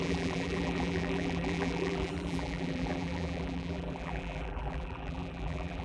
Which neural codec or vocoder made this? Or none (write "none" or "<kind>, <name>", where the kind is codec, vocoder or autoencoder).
vocoder, BigVGAN v2